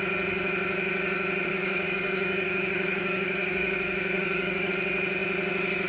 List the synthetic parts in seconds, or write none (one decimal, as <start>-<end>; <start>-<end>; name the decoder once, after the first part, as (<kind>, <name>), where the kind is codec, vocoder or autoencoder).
1.5-4.7 (codec, DAC)